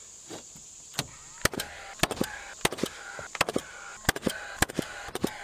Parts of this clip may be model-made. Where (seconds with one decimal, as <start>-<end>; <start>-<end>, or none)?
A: none